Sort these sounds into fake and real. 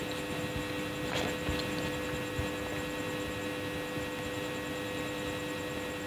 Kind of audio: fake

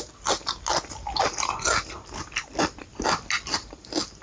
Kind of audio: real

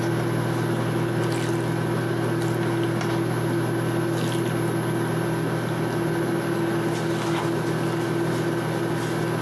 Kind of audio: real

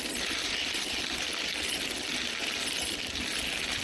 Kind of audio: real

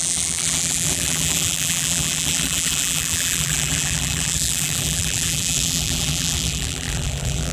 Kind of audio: fake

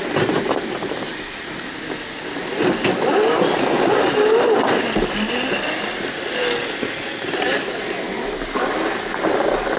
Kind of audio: real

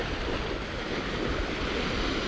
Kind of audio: real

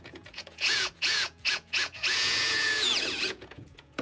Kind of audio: fake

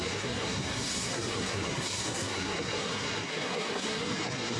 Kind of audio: fake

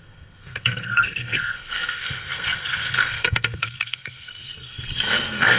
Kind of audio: fake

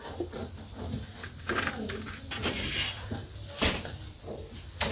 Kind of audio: real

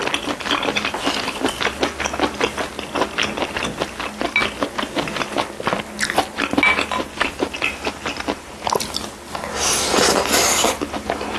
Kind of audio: real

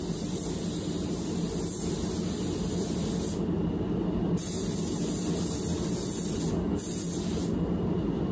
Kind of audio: real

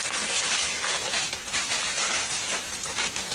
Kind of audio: real